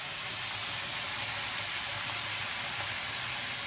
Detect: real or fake real